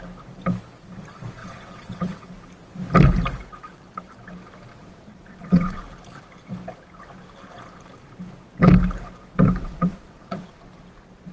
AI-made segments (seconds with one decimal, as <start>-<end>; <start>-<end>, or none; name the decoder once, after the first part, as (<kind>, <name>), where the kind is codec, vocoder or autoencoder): 1.4-2.3 (vocoder, WaveNeXt); 4.7-5.8; 9.6-10.6